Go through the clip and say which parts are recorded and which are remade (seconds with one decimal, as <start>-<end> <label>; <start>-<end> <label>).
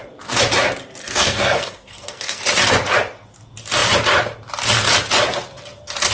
0.0-1.0 recorded; 1.0-2.4 remade; 2.4-6.1 recorded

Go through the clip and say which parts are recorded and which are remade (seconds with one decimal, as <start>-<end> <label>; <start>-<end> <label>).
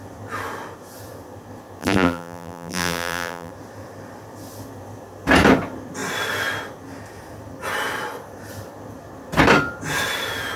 0.0-1.8 recorded; 1.8-3.5 remade; 3.5-10.6 recorded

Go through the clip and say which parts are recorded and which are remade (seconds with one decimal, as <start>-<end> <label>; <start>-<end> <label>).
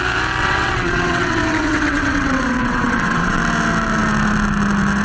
0.0-0.4 recorded; 0.4-3.4 remade; 3.4-5.0 recorded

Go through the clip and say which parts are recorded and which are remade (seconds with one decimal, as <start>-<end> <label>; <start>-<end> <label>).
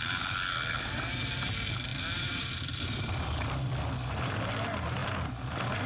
0.0-1.9 recorded; 1.9-3.9 remade; 3.9-5.0 recorded; 5.0-5.9 remade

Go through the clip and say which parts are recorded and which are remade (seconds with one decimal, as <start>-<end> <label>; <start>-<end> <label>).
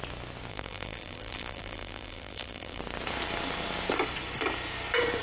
0.0-0.5 recorded; 0.5-2.8 remade; 2.8-5.2 recorded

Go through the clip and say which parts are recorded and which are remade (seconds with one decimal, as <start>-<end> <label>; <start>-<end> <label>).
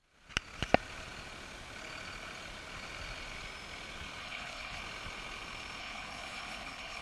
0.0-4.2 recorded; 4.2-4.8 remade; 4.8-5.8 recorded; 5.8-7.0 remade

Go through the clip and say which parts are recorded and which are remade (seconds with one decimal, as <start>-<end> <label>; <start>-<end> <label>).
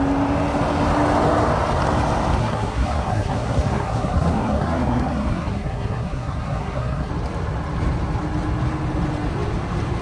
0.0-2.4 recorded; 2.4-7.1 remade; 7.1-10.0 recorded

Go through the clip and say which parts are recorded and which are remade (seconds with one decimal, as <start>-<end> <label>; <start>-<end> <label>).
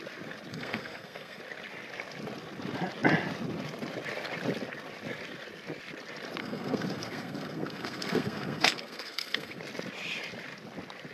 0.0-0.5 recorded; 0.5-1.4 remade; 1.4-6.4 recorded; 6.4-9.6 remade; 9.6-11.1 recorded